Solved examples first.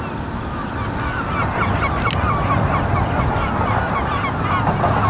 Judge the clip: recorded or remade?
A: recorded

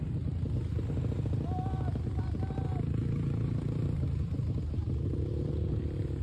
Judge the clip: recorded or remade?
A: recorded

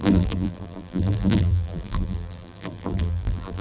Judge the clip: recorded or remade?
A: remade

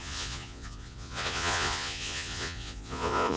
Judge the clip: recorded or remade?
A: remade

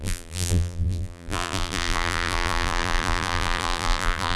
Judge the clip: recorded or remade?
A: remade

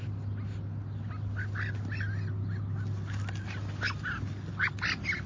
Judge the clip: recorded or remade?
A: recorded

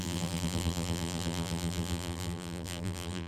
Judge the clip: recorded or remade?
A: remade